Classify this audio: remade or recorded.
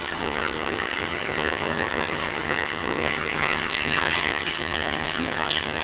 remade